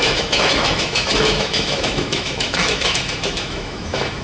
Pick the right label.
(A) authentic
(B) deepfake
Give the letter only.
B